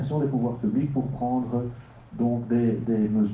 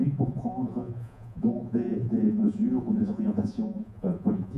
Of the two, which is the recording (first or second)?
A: first